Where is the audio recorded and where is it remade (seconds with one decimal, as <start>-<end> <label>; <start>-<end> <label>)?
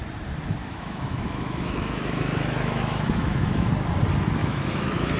0.0-0.6 recorded; 0.6-3.7 remade; 3.7-4.4 recorded; 4.4-5.2 remade